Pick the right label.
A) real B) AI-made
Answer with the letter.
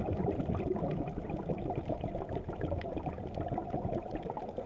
A